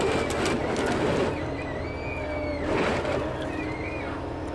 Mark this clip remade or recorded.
recorded